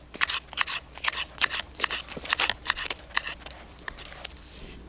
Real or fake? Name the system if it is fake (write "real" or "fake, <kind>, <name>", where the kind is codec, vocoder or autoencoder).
fake, vocoder, BigVGAN v2